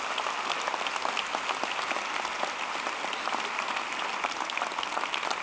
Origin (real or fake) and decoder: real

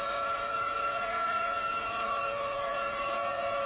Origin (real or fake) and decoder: fake, vocoder, Vocos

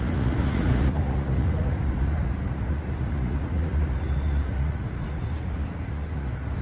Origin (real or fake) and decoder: fake, vocoder, Vocos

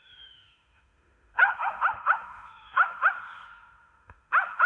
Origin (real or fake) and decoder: fake, autoencoder, DAC-VAE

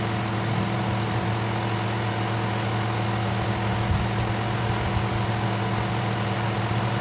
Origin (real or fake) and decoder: real